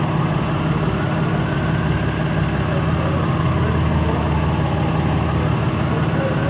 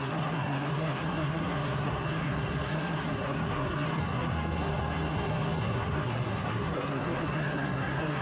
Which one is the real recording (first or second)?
first